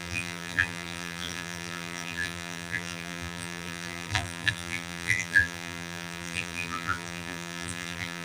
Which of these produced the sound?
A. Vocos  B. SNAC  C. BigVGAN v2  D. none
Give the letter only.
C